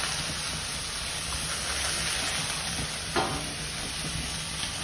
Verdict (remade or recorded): recorded